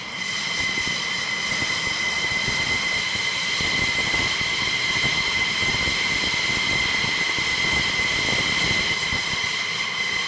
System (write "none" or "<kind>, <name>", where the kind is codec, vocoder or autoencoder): none